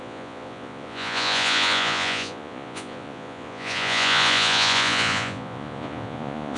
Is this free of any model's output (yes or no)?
no